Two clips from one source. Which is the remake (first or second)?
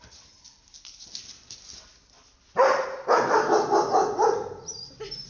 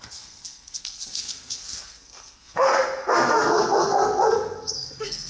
second